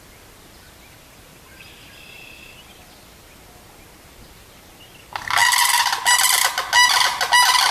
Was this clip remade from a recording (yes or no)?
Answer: no